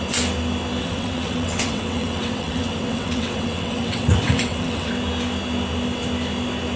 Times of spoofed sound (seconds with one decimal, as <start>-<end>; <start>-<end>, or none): 0.8-4.9